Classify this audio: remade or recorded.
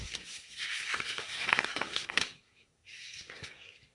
remade